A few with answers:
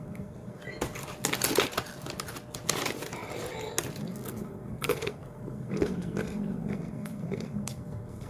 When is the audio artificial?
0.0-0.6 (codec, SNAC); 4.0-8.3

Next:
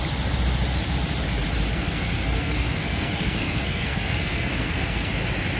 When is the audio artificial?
1.7-5.1 (codec, SNAC)

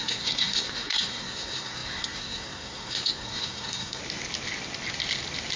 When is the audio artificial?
0.0-4.0 (codec, SNAC)

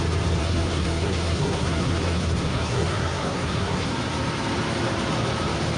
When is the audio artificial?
0.4-3.9 (codec, SNAC)

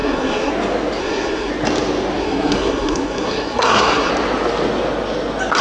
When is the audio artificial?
0.0-0.5 (codec, SNAC); 1.0-1.5; 2.2-4.1

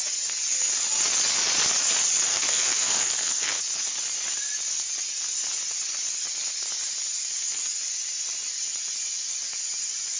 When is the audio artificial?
2.3-3.6 (codec, SNAC)